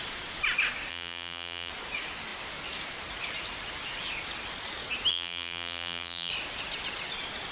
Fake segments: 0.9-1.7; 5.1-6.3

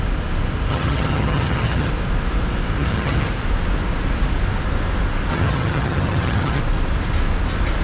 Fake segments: 0.7-1.9; 2.8-3.3; 5.3-6.6

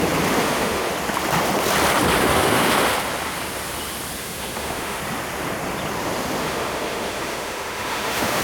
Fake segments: 0.4-0.9; 2.2-2.7; 4.2-5.0; 6.4-8.4